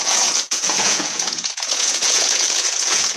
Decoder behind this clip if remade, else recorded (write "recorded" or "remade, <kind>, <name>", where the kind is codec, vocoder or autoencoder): remade, vocoder, Vocos